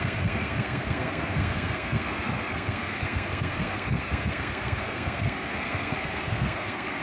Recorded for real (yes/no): no